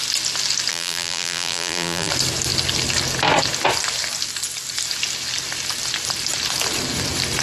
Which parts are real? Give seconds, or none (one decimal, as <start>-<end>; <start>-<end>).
0.0-0.7; 2.1-7.4